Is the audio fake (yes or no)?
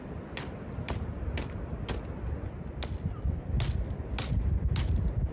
no